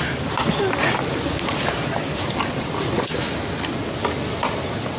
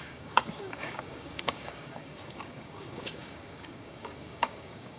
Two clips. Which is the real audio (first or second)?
first